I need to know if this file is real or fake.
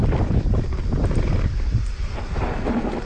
real